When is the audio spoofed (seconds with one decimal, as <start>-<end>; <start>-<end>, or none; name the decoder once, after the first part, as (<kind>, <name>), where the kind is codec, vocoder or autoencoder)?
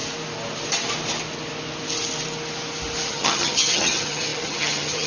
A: 3.1-5.1 (vocoder, HiFi-GAN)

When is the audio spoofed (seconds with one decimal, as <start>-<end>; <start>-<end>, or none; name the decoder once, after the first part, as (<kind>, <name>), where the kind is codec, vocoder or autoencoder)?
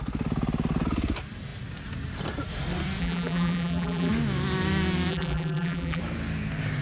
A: 3.0-4.1 (vocoder, BigVGAN v2); 5.1-6.0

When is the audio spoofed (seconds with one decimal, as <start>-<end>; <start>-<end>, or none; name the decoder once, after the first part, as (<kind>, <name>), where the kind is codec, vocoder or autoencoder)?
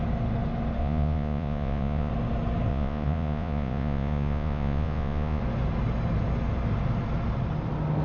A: 0.8-2.1 (vocoder, Vocos); 2.7-5.4